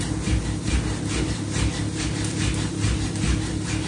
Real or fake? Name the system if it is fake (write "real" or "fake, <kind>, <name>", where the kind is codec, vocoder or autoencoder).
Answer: real